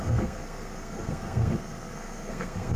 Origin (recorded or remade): remade